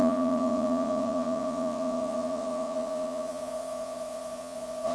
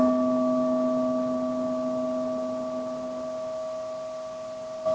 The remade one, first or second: first